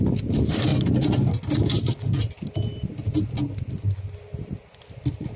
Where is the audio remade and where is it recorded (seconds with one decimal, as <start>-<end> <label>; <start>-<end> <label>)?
0.0-5.4 recorded